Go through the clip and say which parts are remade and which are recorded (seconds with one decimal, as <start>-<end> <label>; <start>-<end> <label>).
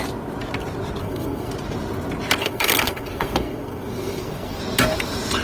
0.0-1.0 recorded; 1.0-1.5 remade; 1.5-2.4 recorded; 2.4-4.6 remade; 4.6-5.4 recorded